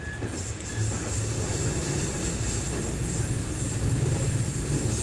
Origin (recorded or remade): recorded